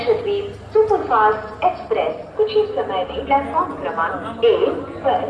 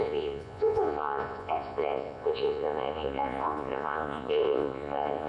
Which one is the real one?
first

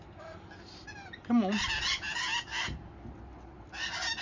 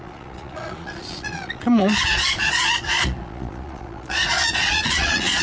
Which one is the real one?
first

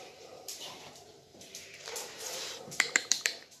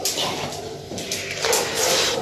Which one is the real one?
second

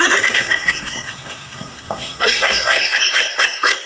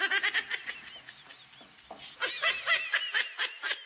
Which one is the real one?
second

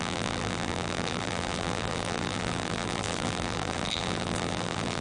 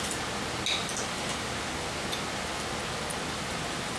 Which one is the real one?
second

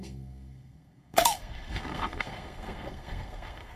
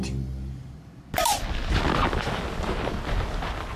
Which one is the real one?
second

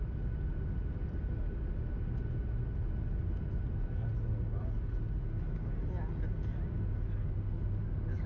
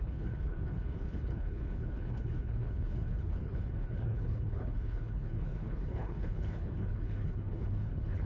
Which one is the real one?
first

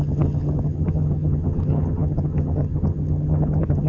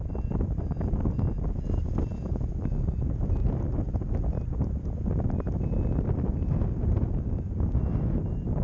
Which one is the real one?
second